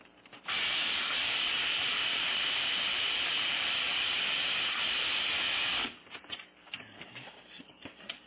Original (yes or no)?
no